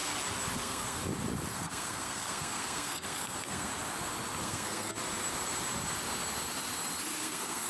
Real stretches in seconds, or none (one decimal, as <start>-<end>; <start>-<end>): 0.0-0.6; 1.0-1.5; 3.7-4.4; 4.9-7.2